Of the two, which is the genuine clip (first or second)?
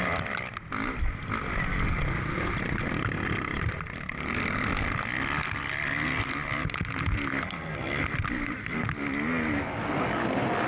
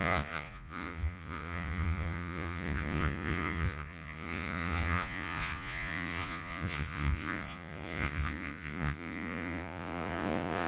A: first